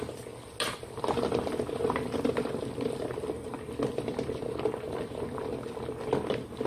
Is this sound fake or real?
real